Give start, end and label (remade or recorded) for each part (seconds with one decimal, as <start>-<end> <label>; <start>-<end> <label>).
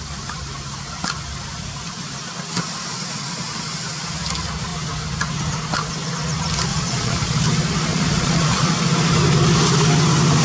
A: 0.0-6.7 recorded; 6.7-7.3 remade; 7.3-7.9 recorded; 7.9-8.8 remade; 8.8-10.4 recorded